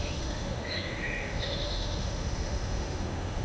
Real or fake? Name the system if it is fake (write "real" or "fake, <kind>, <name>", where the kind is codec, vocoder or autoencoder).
fake, autoencoder, DAC-VAE